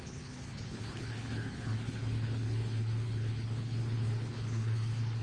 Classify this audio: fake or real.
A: fake